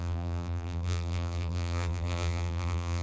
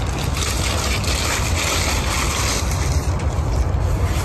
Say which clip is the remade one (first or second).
first